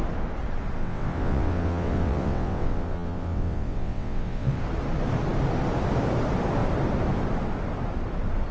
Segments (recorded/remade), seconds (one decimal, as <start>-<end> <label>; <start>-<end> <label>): 0.0-0.8 recorded; 0.8-4.6 remade; 4.6-8.5 recorded